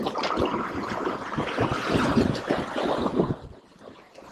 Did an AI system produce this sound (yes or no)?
no